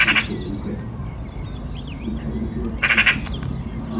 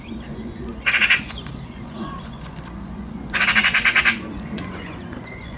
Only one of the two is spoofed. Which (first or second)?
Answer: second